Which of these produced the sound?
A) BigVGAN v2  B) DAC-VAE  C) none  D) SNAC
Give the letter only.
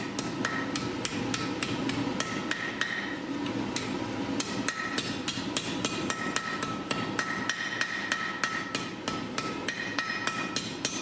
C